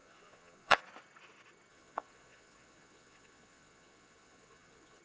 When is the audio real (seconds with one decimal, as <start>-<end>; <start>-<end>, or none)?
0.8-1.7